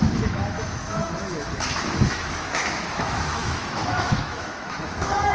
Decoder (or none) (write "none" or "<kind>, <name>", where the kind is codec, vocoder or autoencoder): autoencoder, DAC-VAE